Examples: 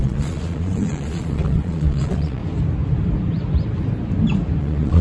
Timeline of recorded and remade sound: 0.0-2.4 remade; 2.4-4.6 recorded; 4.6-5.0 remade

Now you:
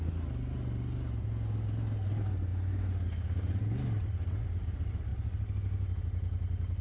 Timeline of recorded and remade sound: 0.0-6.8 recorded

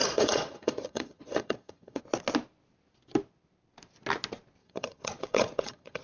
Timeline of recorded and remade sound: 0.0-2.0 remade; 2.0-4.6 recorded; 4.6-6.0 remade

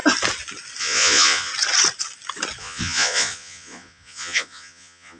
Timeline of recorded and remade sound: 0.0-0.8 recorded; 0.8-1.5 remade; 1.5-2.6 recorded; 2.6-5.2 remade

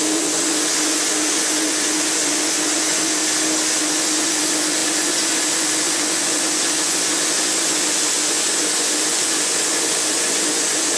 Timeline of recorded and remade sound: 0.0-3.2 remade; 3.2-3.8 recorded; 3.8-11.0 remade